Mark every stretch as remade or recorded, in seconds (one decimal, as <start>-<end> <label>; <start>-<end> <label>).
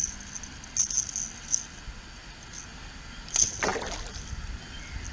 0.0-5.1 recorded